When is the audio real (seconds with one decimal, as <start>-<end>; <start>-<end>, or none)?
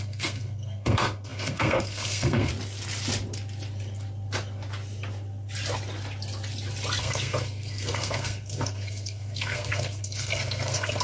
2.5-7.0